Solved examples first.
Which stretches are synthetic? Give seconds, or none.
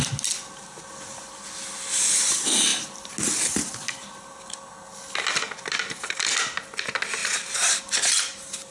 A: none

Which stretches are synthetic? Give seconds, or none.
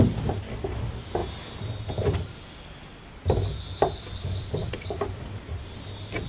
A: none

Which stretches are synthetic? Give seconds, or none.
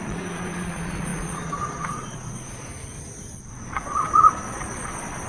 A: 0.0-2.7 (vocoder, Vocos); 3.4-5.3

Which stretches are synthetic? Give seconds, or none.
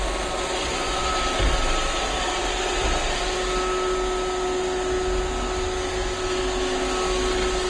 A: 0.6-1.1 (vocoder, Vocos)